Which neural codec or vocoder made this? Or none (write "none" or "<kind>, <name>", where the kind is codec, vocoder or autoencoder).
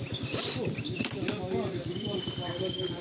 none